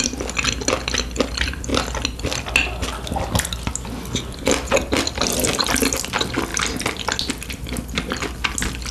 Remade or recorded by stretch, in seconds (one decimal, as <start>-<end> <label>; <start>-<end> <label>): 0.0-8.9 recorded